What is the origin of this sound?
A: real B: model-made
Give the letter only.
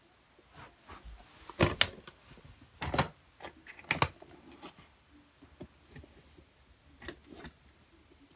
A